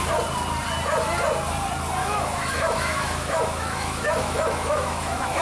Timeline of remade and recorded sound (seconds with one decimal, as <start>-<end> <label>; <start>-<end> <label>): 0.0-2.0 recorded; 2.0-5.4 remade